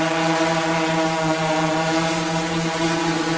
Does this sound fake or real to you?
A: real